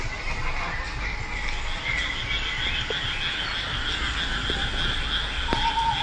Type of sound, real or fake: real